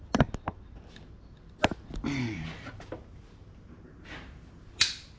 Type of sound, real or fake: real